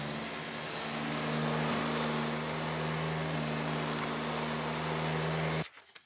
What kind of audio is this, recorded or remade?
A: recorded